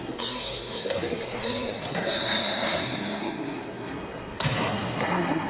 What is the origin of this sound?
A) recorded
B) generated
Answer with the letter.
B